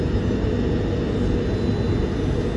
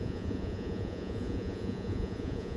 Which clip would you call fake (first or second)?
second